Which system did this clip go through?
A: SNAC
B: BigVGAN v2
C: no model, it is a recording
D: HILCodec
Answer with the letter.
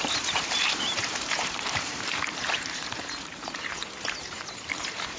B